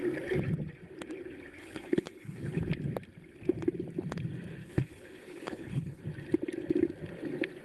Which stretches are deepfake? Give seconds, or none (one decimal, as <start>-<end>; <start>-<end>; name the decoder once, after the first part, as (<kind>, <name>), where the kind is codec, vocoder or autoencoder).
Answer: 1.6-2.6 (codec, HILCodec); 4.6-6.0